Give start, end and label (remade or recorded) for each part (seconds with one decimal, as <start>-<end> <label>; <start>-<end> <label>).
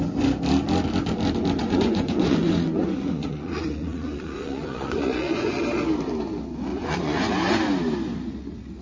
0.0-1.6 recorded; 1.6-5.6 remade; 5.6-6.7 recorded; 6.7-7.3 remade; 7.3-8.8 recorded